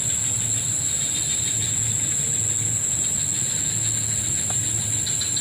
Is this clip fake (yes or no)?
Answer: no